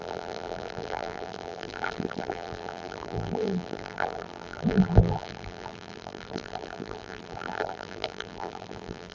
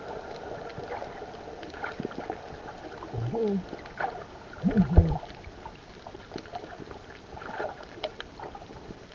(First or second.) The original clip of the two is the second